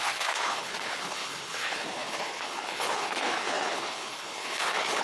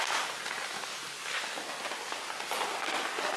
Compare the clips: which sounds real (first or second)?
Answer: second